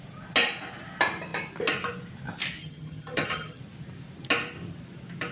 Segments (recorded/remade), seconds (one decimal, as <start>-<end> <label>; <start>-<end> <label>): 0.0-2.6 recorded; 2.6-3.6 remade; 3.6-5.3 recorded